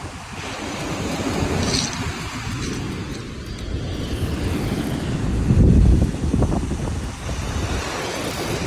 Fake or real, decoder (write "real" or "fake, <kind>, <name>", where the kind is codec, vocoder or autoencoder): real